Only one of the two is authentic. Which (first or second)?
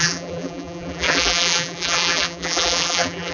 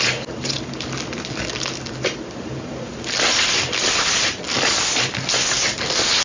second